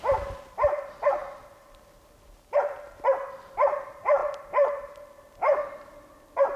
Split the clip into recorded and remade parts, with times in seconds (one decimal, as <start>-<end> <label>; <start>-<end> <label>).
0.0-6.6 recorded